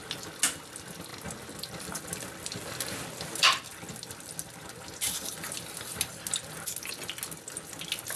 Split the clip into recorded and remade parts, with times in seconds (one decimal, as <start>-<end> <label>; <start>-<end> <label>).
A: 0.0-8.2 recorded